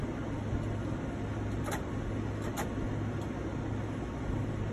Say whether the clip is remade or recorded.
recorded